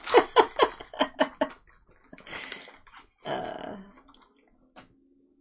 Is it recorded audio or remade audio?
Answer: recorded